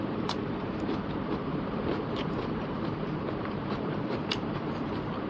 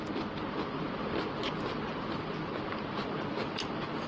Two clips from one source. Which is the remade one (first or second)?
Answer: first